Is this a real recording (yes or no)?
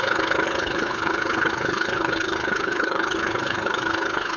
no